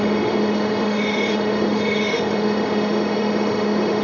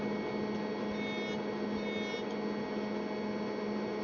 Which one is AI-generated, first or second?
first